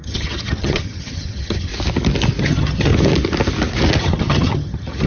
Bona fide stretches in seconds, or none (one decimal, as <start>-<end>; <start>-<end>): 1.7-2.4; 2.9-4.0